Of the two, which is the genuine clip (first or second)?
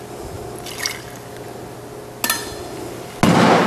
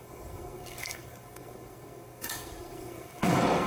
first